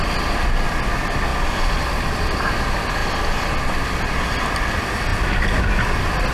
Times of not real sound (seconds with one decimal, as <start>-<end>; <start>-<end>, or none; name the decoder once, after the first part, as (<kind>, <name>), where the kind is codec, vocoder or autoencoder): none